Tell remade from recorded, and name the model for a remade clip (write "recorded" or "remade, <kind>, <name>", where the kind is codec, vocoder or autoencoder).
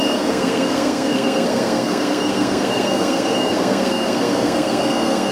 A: remade, codec, SNAC